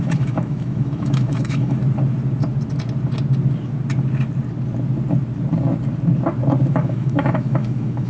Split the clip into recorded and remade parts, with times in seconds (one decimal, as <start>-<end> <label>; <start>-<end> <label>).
0.0-1.8 remade; 1.8-6.7 recorded; 6.7-8.1 remade